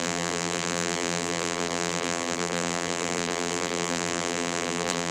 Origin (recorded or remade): remade